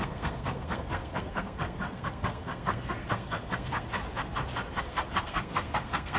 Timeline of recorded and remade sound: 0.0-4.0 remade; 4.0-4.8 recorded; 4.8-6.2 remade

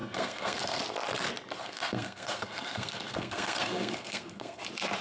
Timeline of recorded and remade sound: 0.0-0.8 remade; 0.8-1.6 recorded; 1.6-4.6 remade; 4.6-5.0 recorded

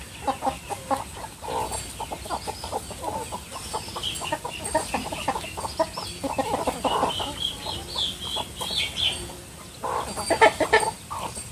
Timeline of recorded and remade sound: 0.0-11.5 recorded